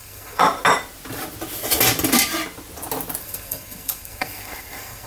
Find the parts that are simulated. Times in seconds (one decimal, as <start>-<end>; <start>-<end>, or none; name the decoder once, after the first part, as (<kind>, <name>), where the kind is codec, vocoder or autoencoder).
0.0-0.4 (codec, SNAC); 3.2-5.1